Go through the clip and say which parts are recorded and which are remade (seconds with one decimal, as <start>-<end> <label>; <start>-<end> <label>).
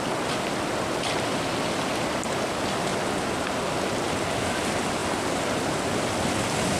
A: 0.0-2.9 remade; 2.9-4.4 recorded; 4.4-6.8 remade